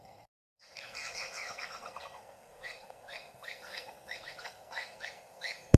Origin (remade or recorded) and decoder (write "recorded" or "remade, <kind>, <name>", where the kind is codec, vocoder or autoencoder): remade, codec, SNAC